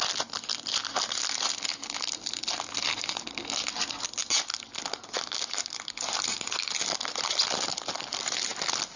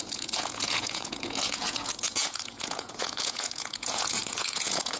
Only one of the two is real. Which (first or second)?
first